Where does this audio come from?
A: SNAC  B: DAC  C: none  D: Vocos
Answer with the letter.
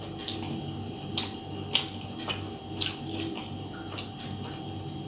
C